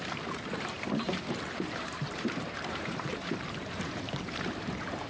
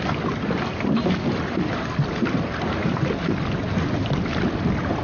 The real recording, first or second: second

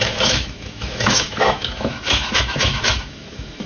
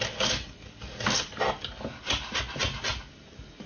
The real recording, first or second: second